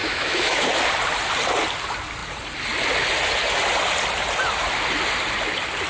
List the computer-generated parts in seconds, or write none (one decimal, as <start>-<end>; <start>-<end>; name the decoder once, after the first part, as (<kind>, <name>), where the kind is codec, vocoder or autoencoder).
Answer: 0.0-0.7 (autoencoder, DAC-VAE)